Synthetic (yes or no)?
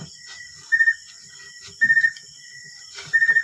no